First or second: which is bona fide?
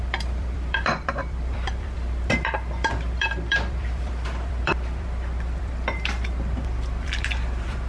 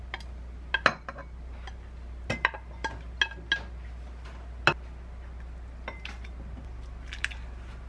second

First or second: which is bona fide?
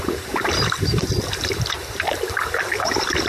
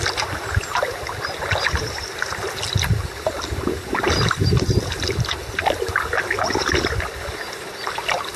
second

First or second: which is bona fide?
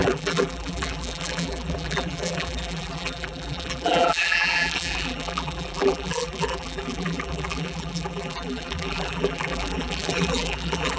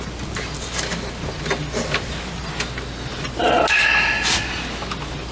second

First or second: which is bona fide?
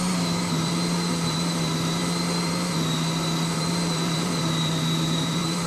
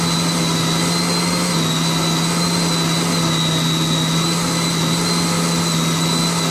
second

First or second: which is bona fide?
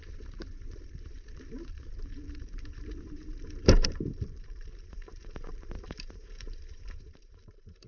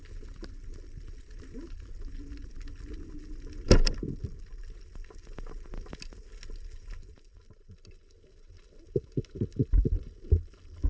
second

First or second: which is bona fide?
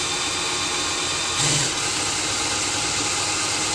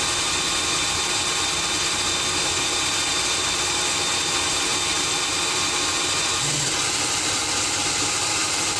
first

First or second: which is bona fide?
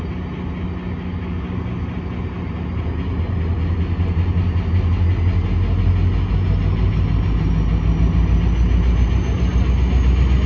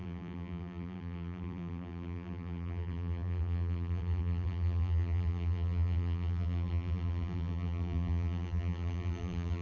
first